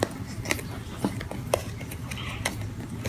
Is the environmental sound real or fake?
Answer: real